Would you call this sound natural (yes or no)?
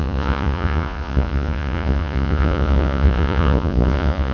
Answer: no